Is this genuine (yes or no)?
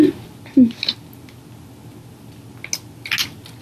yes